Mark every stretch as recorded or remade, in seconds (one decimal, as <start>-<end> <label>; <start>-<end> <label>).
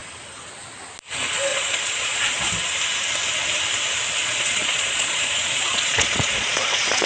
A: 0.0-1.5 recorded; 1.5-2.5 remade; 2.5-4.2 recorded; 4.2-7.1 remade